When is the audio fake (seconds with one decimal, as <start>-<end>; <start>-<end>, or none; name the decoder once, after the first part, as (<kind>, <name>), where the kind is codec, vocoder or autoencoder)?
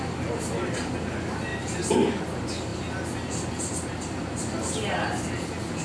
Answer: none